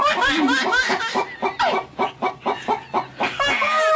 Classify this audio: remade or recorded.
recorded